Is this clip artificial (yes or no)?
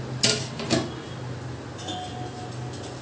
no